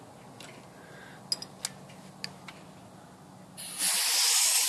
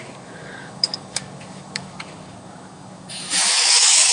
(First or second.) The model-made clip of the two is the second